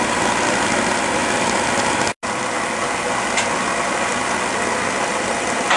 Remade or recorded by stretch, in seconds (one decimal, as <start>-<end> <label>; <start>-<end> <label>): 0.0-5.8 recorded